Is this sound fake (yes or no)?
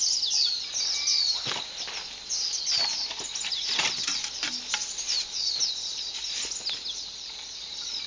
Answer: no